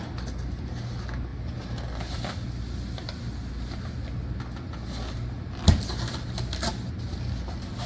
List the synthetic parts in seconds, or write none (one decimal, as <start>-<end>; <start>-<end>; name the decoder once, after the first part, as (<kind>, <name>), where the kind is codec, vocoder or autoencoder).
none